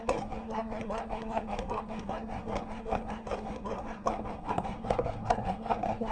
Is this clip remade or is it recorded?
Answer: remade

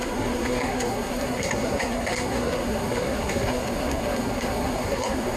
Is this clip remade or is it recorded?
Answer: remade